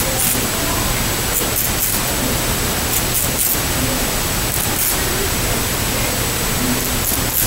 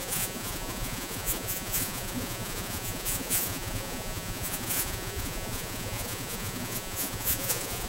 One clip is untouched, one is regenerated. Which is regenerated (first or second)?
second